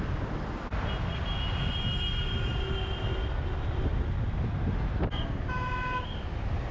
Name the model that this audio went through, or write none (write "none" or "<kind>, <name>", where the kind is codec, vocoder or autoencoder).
none